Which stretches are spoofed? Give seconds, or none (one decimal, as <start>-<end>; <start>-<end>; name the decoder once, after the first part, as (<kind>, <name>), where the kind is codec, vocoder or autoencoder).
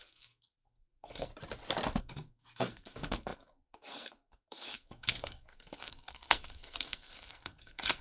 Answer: 0.0-1.3 (codec, SNAC); 2.0-8.0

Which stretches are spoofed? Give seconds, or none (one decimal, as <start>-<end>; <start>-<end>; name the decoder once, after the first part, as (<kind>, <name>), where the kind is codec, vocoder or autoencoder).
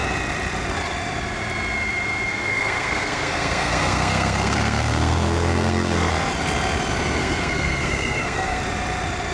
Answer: 2.3-6.1 (codec, SNAC); 7.2-8.6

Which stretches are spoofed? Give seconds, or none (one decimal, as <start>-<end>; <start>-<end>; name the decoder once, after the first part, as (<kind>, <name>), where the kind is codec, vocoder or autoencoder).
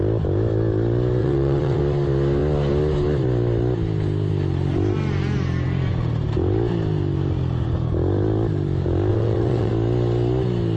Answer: 1.2-1.8 (vocoder, WaveNeXt); 9.1-9.7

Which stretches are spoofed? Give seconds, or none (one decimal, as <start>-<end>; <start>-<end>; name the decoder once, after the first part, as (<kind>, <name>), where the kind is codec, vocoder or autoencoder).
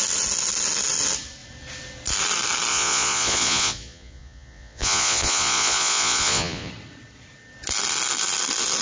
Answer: 2.7-6.7 (vocoder, Vocos)